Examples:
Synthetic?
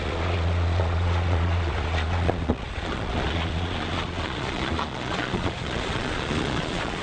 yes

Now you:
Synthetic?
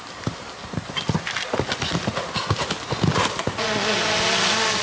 no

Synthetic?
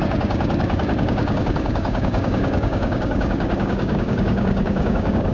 yes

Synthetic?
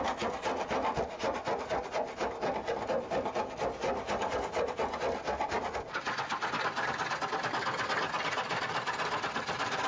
no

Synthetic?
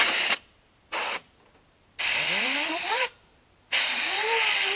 yes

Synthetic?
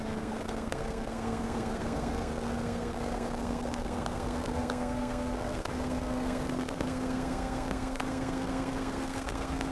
yes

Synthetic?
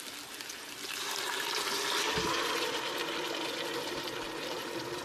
no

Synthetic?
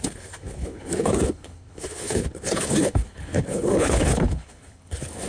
yes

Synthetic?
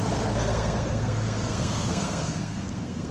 yes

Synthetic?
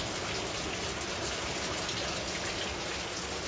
no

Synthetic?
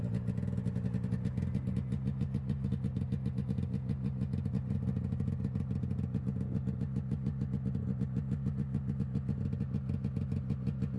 no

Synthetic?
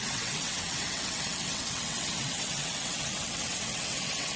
yes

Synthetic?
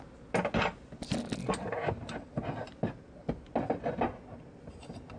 no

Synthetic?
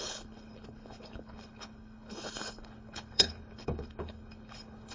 yes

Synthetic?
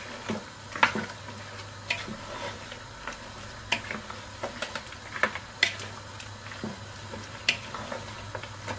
no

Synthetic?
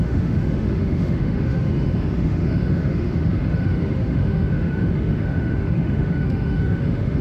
yes